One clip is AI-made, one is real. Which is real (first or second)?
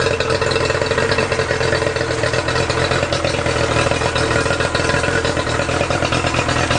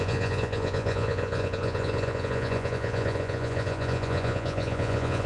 first